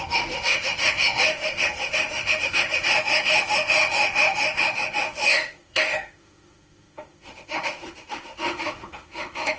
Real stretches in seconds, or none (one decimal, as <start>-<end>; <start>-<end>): none